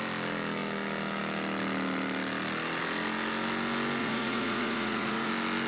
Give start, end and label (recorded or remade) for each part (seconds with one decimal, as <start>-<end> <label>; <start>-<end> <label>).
0.0-4.0 recorded; 4.0-5.3 remade; 5.3-5.7 recorded